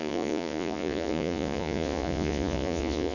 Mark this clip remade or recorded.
remade